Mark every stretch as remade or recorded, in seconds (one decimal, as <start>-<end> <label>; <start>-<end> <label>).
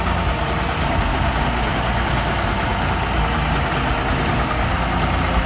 0.0-1.1 recorded; 1.1-1.7 remade; 1.7-5.5 recorded